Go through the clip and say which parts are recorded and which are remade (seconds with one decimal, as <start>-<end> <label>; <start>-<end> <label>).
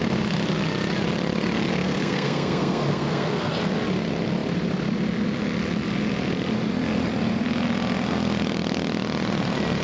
0.0-1.8 recorded; 1.8-3.5 remade; 3.5-9.8 recorded